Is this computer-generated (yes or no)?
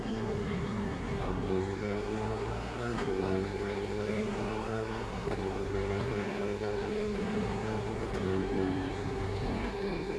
yes